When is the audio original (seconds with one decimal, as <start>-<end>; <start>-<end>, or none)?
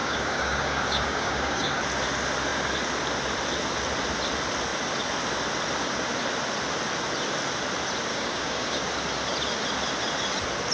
1.8-8.1; 8.8-10.7